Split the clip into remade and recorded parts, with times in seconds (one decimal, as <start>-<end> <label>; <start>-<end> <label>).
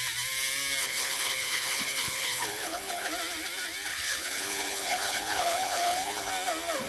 0.0-0.8 recorded; 0.8-3.1 remade; 3.1-3.9 recorded; 3.9-6.3 remade; 6.3-6.9 recorded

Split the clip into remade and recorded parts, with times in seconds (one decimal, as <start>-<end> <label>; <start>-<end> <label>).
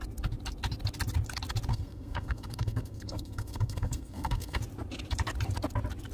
0.0-1.7 recorded; 1.7-4.6 remade; 4.6-6.1 recorded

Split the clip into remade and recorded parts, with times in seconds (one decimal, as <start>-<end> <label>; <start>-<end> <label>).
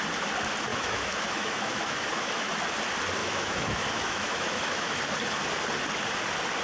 0.0-0.7 recorded; 0.7-2.5 remade; 2.5-3.2 recorded; 3.2-5.0 remade; 5.0-6.6 recorded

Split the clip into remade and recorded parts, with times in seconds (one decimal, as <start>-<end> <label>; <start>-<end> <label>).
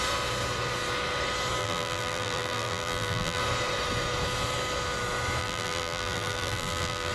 0.0-1.6 recorded; 1.6-3.4 remade; 3.4-5.4 recorded; 5.4-7.1 remade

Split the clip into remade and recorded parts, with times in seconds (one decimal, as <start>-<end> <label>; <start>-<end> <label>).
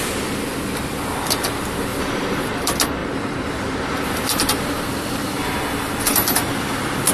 0.0-1.9 recorded; 1.9-2.4 remade; 2.4-3.0 recorded; 3.0-6.6 remade; 6.6-7.1 recorded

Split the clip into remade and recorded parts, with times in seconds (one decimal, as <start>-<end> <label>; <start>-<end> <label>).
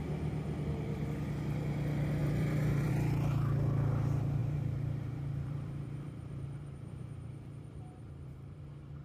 0.0-2.2 recorded; 2.2-2.9 remade; 2.9-4.4 recorded; 4.4-8.6 remade; 8.6-9.0 recorded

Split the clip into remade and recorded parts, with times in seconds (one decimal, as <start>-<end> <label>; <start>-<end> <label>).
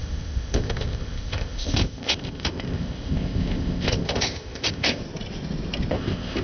0.0-5.0 remade; 5.0-5.9 recorded; 5.9-6.4 remade